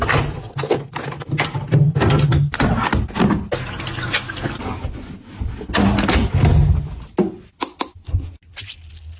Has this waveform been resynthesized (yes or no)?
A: no